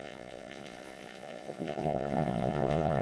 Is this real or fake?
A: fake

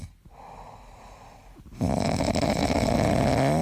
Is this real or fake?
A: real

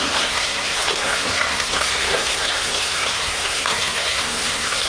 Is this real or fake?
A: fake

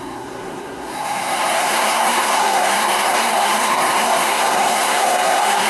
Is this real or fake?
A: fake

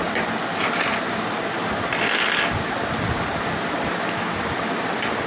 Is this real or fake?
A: real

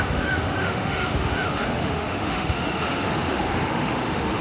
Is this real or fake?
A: fake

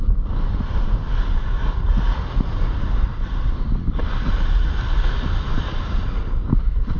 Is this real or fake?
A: real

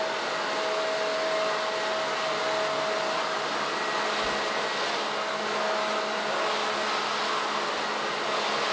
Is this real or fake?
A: real